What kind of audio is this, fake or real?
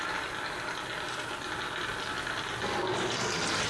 real